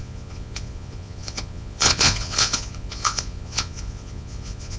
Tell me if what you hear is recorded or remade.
remade